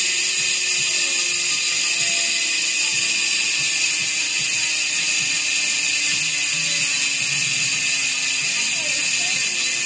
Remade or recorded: recorded